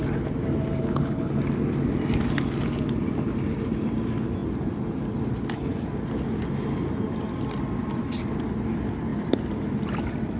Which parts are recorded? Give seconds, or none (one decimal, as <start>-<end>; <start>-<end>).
0.0-0.8; 1.4-10.4